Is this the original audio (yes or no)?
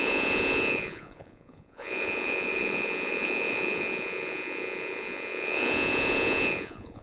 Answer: no